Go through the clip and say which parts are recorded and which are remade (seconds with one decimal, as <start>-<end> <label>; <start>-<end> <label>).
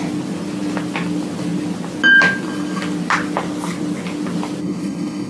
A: 0.0-4.6 recorded; 4.6-5.3 remade